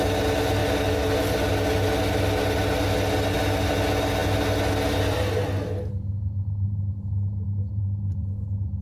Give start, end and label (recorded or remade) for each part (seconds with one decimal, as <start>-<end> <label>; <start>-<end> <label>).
0.0-8.8 recorded